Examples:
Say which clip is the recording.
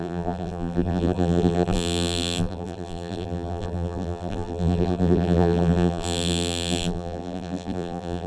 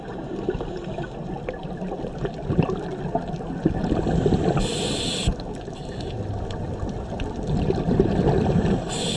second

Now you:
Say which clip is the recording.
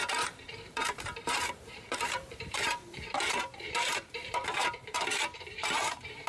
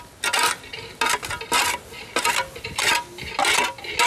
second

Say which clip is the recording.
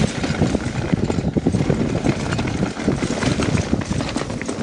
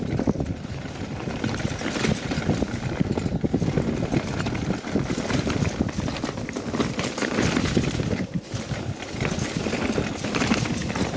first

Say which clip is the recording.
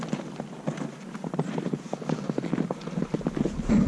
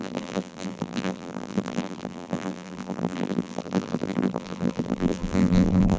first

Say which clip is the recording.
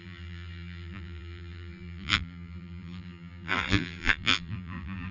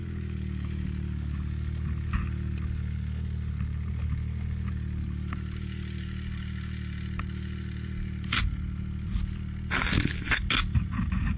second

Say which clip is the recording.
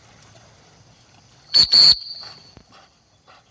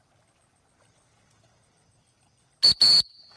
second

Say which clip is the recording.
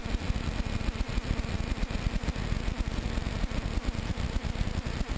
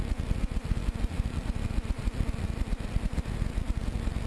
first